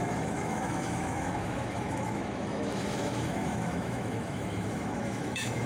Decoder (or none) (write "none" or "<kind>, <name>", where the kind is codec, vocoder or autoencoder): autoencoder, DAC-VAE